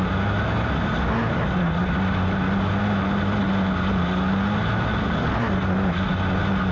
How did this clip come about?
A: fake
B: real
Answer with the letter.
B